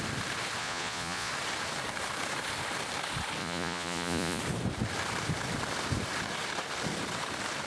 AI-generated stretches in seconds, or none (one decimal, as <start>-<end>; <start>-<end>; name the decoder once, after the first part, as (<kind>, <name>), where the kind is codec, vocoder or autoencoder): 0.6-1.3 (vocoder, Vocos); 3.4-4.4